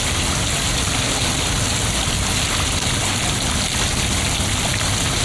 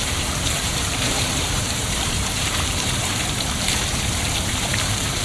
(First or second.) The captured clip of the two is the first